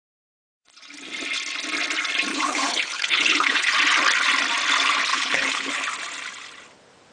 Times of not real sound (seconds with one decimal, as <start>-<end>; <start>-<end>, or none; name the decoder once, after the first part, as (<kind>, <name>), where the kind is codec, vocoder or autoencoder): 2.3-3.7 (codec, HILCodec); 5.1-5.7